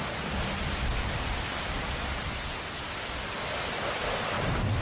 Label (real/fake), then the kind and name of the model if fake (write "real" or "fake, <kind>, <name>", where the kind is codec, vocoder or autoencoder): real